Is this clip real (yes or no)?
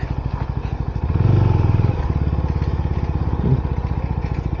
yes